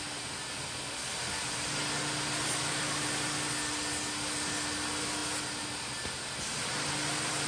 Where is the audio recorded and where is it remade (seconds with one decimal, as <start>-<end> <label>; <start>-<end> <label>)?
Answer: 0.0-7.5 recorded

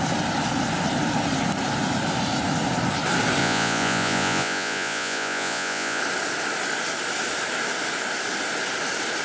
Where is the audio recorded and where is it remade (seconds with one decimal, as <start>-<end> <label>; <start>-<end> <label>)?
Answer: 0.0-3.4 recorded; 3.4-6.0 remade; 6.0-9.2 recorded

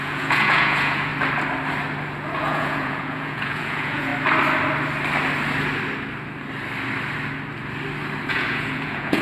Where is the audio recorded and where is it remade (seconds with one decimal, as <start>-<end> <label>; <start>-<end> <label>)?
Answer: 0.0-1.1 remade; 1.1-2.4 recorded; 2.4-4.1 remade; 4.1-8.3 recorded; 8.3-9.2 remade

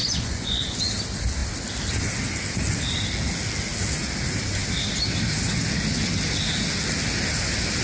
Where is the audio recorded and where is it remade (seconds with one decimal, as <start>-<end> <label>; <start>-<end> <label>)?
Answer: 0.0-0.8 remade; 0.8-7.8 recorded

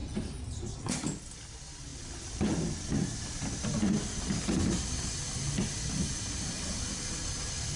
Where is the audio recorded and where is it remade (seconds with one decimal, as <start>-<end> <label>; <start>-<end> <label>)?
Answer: 0.0-7.8 recorded

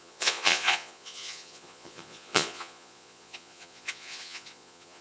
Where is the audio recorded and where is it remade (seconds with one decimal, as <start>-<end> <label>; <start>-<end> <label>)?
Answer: 0.0-5.0 remade

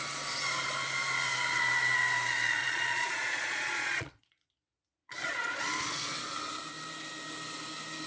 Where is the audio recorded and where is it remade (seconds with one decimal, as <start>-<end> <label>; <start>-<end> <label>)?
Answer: 0.0-2.6 recorded; 2.6-4.5 remade; 4.5-5.0 recorded; 5.0-5.6 remade; 5.6-8.1 recorded